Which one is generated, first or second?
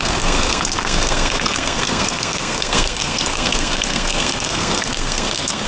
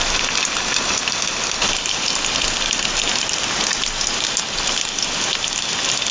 first